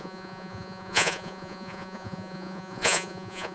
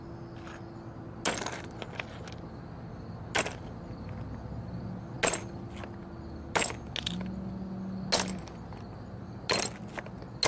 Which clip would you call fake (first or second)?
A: first